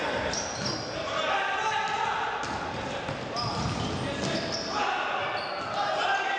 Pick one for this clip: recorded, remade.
recorded